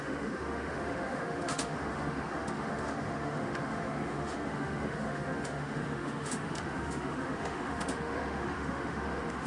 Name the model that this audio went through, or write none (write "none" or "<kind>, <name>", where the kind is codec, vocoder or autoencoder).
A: autoencoder, DAC-VAE